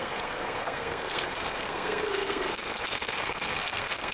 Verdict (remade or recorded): remade